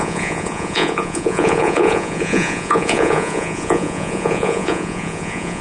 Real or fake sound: fake